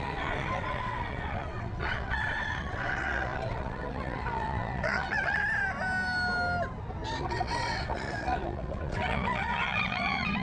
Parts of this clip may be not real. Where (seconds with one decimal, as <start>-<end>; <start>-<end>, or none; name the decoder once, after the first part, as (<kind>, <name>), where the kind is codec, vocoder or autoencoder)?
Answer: 0.0-5.4 (vocoder, WaveNeXt); 7.2-10.4

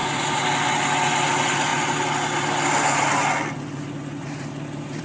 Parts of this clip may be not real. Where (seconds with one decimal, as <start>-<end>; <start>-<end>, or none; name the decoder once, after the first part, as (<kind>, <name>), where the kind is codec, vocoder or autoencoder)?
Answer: none

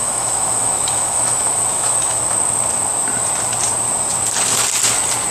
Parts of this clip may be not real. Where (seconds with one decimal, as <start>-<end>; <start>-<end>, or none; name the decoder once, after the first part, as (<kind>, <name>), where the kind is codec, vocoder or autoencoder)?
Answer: 0.0-2.2 (autoencoder, DAC-VAE)